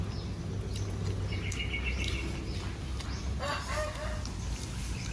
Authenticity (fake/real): real